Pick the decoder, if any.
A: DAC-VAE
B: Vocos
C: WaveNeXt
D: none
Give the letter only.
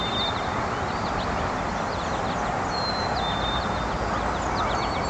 D